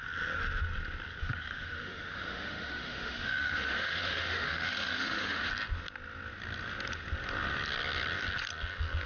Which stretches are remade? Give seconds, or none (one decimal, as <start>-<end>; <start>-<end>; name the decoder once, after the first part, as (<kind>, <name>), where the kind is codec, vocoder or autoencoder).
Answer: 1.2-5.5 (autoencoder, DAC-VAE)